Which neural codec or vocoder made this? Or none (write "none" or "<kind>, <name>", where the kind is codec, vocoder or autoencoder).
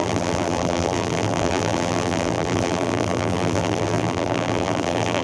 vocoder, BigVGAN v2